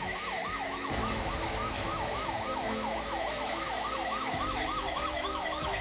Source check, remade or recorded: remade